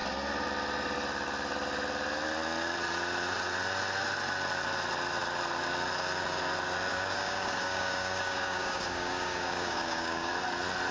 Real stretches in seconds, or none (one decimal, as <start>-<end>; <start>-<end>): 0.0-6.9; 10.3-10.9